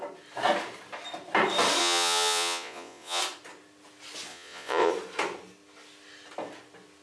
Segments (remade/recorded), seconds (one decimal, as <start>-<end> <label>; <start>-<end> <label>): 0.0-1.8 recorded; 1.8-3.2 remade; 3.2-4.3 recorded; 4.3-4.9 remade; 4.9-7.0 recorded